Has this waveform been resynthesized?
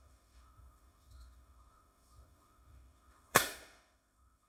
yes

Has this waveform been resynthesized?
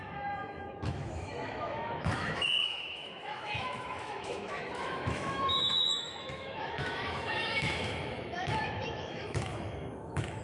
yes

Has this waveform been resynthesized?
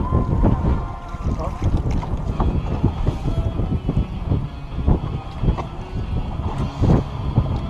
no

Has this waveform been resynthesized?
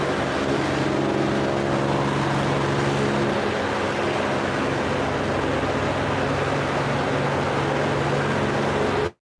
no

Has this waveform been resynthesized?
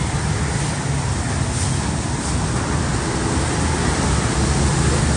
no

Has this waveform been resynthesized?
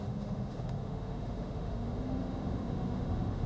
yes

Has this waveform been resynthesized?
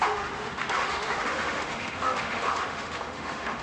yes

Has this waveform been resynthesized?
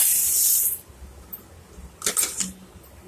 no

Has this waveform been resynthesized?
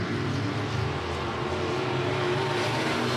no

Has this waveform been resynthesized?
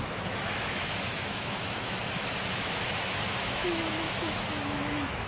yes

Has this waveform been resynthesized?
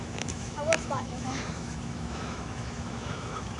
yes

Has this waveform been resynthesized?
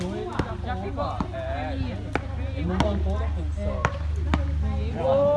no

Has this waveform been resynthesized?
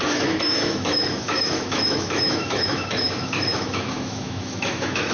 yes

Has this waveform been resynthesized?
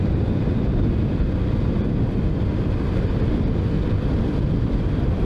no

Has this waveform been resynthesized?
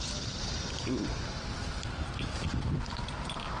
no